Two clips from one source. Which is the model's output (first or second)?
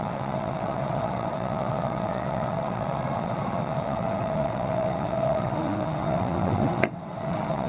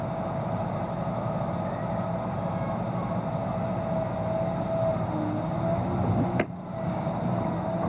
first